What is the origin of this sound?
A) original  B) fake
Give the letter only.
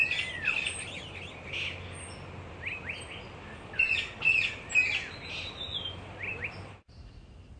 A